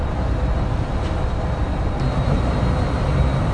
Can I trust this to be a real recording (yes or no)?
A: yes